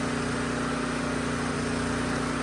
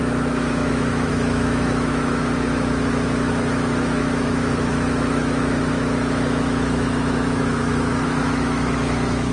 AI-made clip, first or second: second